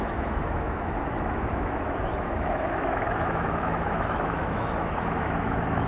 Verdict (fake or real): fake